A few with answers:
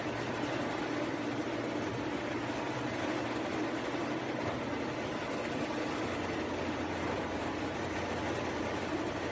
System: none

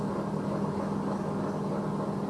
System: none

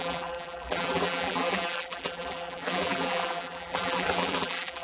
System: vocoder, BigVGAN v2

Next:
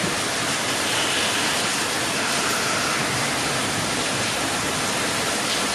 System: none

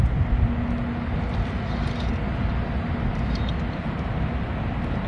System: none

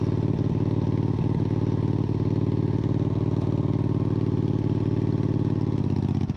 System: none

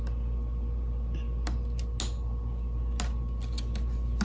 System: none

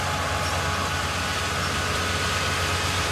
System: none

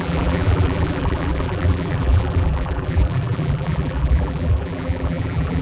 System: vocoder, BigVGAN v2